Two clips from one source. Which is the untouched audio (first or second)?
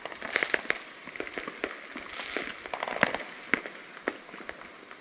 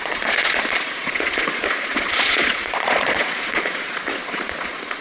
first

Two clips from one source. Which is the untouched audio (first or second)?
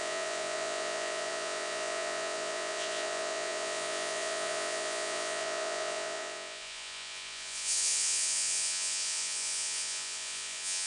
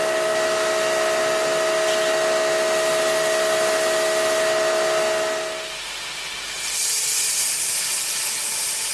second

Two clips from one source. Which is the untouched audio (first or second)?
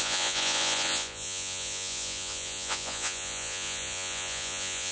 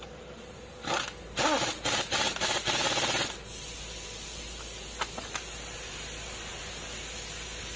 second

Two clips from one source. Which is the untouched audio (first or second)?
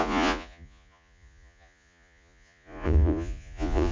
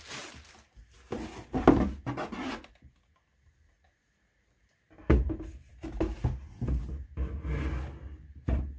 second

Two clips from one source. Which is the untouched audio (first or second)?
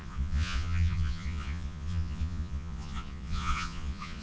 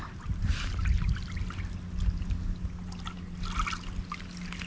second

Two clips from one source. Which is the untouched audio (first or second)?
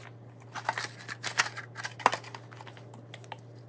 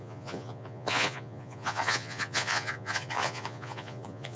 first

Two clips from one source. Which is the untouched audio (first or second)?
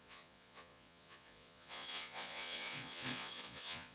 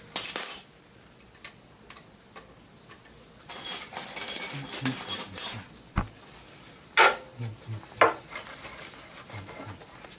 second